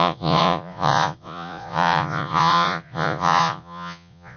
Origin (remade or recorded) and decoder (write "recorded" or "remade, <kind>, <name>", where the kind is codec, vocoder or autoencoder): remade, vocoder, Vocos